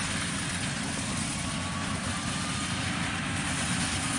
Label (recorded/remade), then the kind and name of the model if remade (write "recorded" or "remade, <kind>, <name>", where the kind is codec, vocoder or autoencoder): recorded